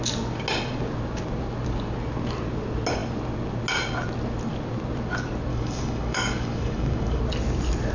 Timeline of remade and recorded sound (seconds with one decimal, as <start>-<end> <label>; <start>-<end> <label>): 0.0-5.5 recorded; 5.5-7.2 remade; 7.2-7.9 recorded